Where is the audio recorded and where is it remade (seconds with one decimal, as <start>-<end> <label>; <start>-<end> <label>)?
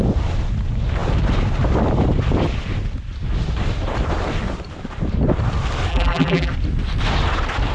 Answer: 0.0-5.9 recorded; 5.9-6.5 remade; 6.5-7.7 recorded